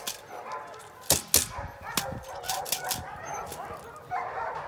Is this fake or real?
real